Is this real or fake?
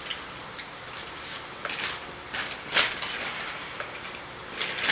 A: real